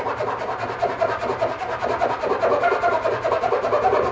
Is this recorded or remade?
recorded